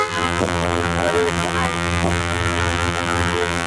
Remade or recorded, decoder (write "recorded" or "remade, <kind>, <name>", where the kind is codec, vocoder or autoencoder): remade, vocoder, BigVGAN v2